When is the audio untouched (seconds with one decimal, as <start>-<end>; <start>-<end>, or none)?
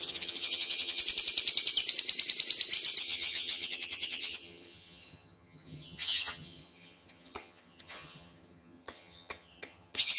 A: 1.0-3.0